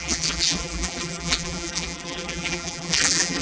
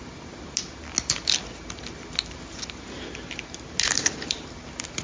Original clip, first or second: second